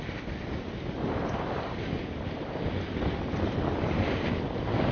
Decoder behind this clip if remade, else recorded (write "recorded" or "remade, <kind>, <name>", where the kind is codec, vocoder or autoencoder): recorded